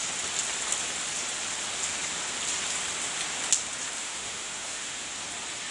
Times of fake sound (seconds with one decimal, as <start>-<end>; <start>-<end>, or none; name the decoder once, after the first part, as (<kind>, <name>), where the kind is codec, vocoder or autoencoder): 4.0-5.1 (autoencoder, DAC-VAE)